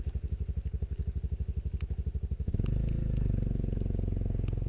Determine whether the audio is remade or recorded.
recorded